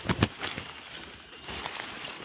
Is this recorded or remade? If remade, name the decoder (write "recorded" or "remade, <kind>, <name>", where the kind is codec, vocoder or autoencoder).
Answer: recorded